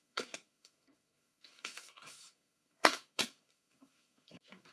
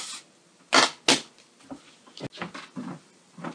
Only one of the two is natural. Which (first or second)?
second